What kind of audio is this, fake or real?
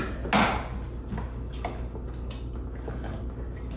real